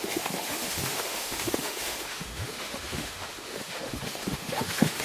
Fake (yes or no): yes